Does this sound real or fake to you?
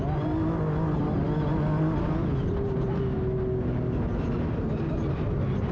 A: real